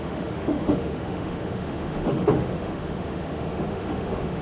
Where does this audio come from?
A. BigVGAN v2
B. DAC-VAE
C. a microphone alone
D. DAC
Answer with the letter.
B